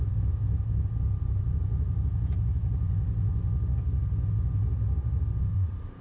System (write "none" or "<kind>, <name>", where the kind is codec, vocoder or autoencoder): none